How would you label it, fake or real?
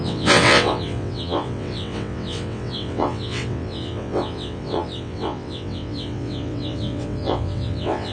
fake